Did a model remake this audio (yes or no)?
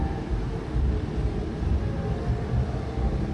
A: no